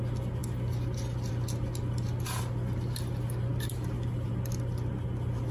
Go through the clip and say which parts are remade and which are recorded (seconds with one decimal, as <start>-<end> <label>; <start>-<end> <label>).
0.0-5.5 recorded

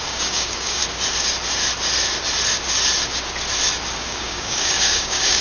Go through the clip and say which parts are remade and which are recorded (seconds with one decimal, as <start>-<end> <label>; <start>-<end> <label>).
0.0-0.8 remade; 0.8-4.0 recorded; 4.0-5.4 remade

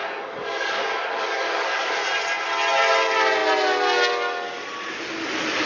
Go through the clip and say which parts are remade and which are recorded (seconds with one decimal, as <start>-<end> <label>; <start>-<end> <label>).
0.0-2.0 remade; 2.0-5.7 recorded